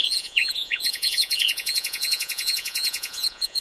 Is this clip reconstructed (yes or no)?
yes